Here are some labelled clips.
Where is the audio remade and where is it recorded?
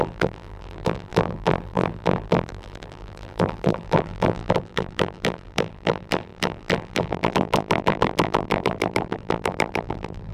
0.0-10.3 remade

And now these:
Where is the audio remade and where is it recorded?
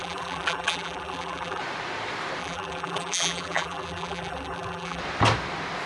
0.0-1.6 remade; 1.6-2.4 recorded; 2.4-5.0 remade; 5.0-5.9 recorded